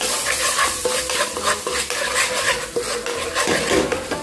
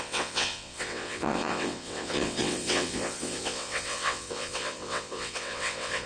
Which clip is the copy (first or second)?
second